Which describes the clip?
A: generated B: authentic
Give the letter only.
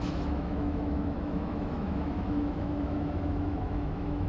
A